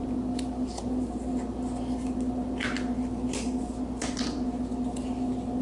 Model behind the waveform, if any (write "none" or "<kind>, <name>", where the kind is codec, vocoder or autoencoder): none